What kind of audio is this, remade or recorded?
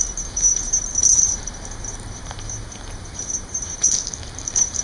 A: remade